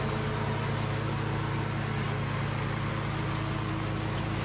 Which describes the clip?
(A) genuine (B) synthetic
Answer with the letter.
A